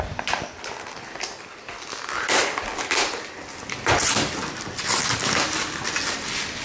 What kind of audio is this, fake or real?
real